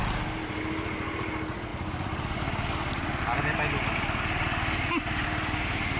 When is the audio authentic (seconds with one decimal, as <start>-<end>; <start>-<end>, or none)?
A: 0.0-1.7; 3.2-6.0